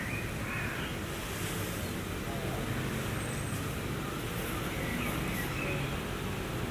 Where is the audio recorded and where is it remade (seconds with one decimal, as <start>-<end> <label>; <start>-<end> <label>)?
0.0-6.7 recorded